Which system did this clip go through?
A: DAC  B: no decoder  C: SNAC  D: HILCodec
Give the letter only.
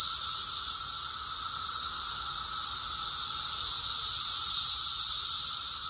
B